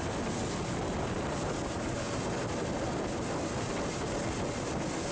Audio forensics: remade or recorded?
recorded